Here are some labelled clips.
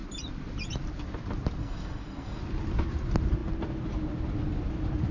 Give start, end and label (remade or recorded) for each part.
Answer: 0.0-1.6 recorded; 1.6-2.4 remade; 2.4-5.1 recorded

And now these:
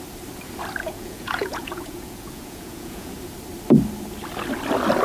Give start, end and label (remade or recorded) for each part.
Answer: 0.0-0.8 recorded; 0.8-3.2 remade; 3.2-5.0 recorded

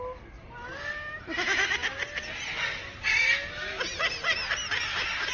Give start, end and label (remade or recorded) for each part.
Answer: 0.0-5.3 recorded